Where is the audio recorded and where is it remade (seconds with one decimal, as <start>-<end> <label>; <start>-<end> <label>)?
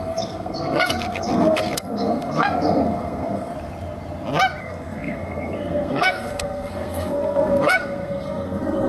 0.0-3.5 remade; 3.5-4.6 recorded; 4.6-8.9 remade